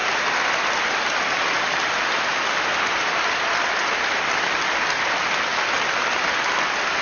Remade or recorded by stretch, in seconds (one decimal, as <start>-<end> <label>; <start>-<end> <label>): 0.0-7.0 recorded